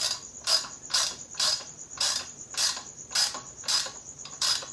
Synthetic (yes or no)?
yes